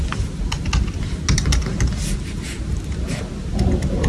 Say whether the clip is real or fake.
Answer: real